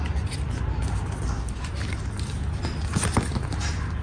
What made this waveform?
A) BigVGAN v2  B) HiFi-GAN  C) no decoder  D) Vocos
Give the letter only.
C